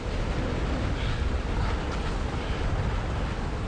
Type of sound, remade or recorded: recorded